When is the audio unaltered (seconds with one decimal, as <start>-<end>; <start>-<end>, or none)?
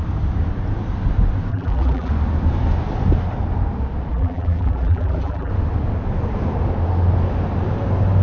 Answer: 0.0-1.5; 2.1-4.1; 5.5-8.2